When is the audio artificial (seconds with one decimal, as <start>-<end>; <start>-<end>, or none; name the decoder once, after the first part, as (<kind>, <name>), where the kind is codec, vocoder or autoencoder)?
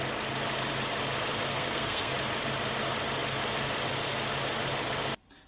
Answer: 1.5-2.1 (codec, SNAC)